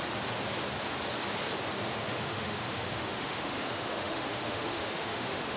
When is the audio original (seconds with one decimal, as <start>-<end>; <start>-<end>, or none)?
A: 0.0-2.0